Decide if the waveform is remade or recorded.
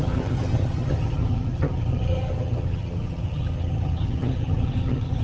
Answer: remade